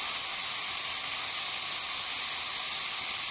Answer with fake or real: real